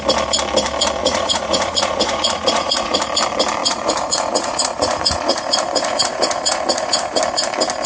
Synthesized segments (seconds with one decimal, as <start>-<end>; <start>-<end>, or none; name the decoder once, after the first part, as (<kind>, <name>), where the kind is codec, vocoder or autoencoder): 1.0-3.0 (vocoder, Vocos); 3.6-7.2